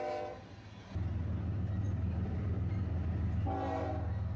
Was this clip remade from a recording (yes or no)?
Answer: no